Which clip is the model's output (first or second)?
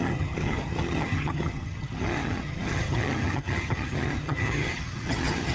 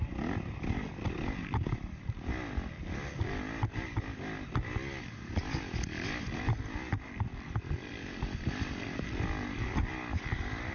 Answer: first